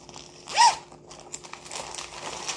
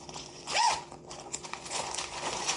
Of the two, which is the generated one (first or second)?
second